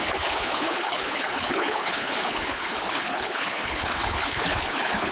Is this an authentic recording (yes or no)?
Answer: no